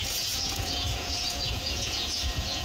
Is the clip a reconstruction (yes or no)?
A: yes